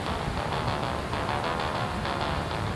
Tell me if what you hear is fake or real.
real